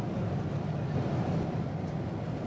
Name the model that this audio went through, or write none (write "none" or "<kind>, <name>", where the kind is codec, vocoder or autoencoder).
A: none